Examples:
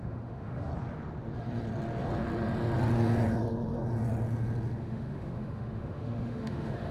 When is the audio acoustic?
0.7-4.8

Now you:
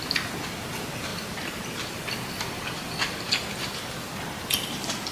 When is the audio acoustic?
0.0-5.1

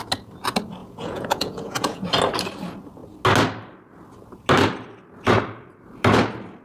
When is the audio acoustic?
0.0-0.8; 2.0-6.6

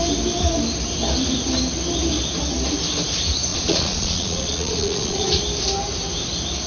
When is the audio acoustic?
0.0-3.5; 5.4-6.7

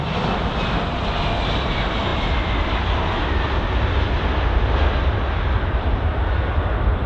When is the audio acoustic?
0.0-7.1

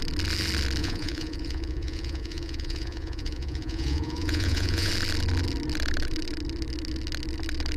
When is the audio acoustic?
0.0-0.8; 4.9-7.8